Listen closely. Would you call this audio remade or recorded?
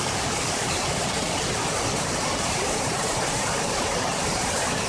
remade